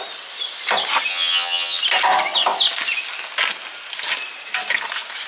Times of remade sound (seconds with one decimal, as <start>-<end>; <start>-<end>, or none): 1.1-1.8